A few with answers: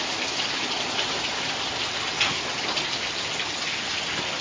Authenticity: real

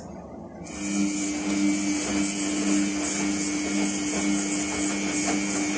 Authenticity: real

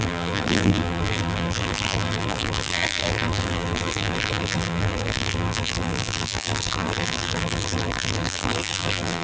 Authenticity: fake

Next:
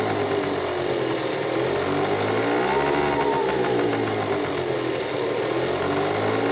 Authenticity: real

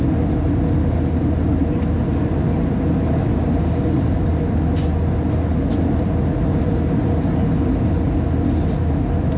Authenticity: real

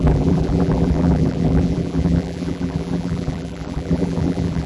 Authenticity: fake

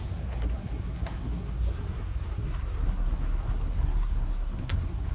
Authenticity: fake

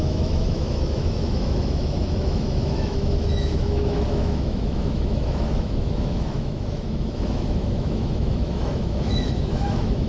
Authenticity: fake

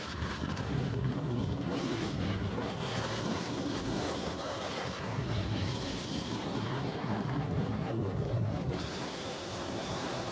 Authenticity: fake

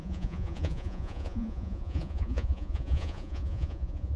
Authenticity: fake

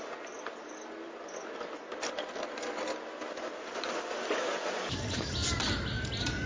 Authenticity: real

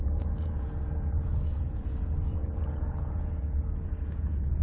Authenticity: fake